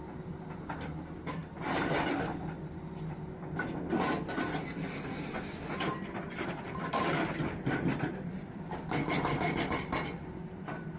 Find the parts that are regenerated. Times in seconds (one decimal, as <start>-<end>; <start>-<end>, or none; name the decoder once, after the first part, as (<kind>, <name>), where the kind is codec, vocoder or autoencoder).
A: 0.0-1.4 (vocoder, BigVGAN v2); 6.0-11.0